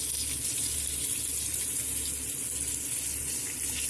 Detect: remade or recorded recorded